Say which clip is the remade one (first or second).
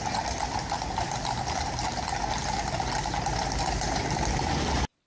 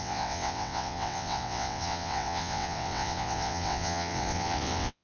second